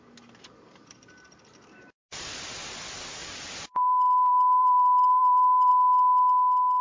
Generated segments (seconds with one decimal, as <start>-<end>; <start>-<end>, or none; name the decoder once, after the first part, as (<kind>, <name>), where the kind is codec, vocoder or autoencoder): 3.2-5.7 (vocoder, BigVGAN v2)